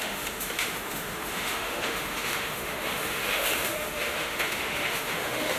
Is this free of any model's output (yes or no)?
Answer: no